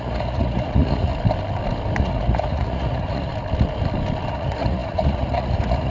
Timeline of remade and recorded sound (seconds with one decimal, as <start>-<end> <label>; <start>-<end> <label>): 0.0-1.1 remade; 1.1-2.0 recorded; 2.0-3.3 remade; 3.3-4.3 recorded; 4.3-5.9 remade